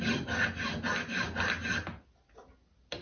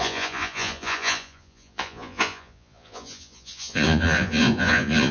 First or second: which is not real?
second